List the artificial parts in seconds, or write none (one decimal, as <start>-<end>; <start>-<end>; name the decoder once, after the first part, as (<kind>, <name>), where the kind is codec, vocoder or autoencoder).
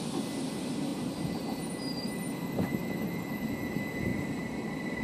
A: 0.9-2.3 (vocoder, BigVGAN v2); 4.1-5.0